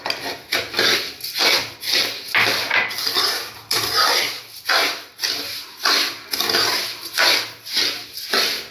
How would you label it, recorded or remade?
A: recorded